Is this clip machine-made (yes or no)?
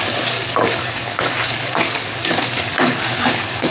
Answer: yes